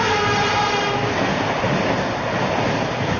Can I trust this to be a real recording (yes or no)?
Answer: yes